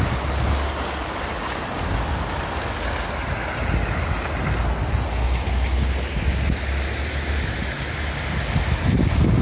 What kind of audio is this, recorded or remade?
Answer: recorded